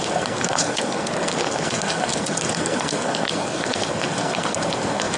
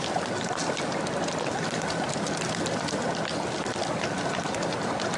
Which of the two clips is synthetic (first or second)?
first